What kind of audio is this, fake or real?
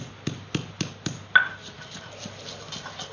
real